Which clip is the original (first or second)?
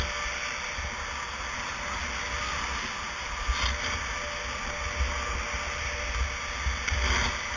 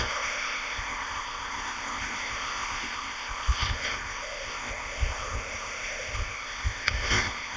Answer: first